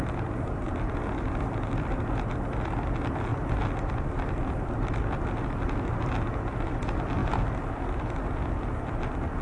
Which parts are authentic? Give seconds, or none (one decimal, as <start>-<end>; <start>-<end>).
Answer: 0.0-3.3; 5.0-9.4